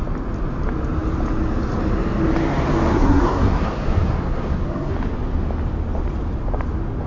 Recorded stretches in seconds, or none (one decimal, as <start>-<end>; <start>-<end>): 0.0-2.9; 4.9-7.1